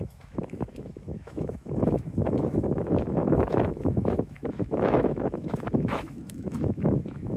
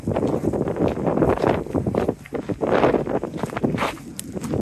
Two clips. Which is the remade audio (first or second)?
first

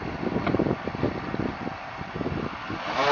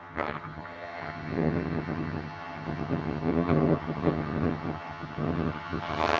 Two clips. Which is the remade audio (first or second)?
second